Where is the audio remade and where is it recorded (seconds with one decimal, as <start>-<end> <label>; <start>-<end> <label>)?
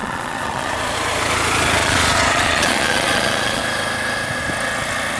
0.0-0.8 remade; 0.8-1.8 recorded; 1.8-3.6 remade; 3.6-5.2 recorded